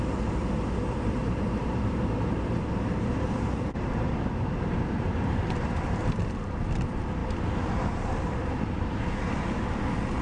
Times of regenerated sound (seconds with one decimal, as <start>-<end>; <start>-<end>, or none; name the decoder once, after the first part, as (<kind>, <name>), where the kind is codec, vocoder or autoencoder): 1.2-6.4 (vocoder, BigVGAN v2); 7.2-9.3